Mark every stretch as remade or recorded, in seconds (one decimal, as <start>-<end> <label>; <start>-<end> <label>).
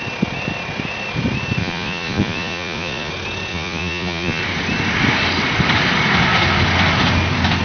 0.0-1.6 recorded; 1.6-3.1 remade; 3.1-3.5 recorded; 3.5-4.4 remade; 4.4-7.6 recorded